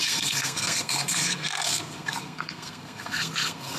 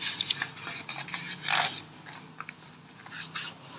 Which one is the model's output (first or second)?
first